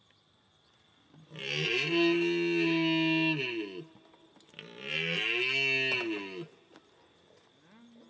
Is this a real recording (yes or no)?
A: yes